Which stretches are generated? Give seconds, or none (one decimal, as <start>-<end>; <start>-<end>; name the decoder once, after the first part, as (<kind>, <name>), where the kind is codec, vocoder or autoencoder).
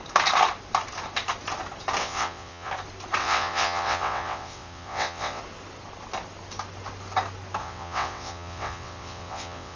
2.0-2.7 (vocoder, WaveNeXt); 3.2-5.4; 7.6-9.8